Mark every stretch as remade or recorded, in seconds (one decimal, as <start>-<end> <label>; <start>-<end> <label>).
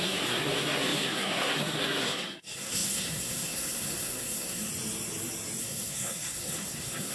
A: 0.0-4.7 remade; 4.7-5.6 recorded; 5.6-7.1 remade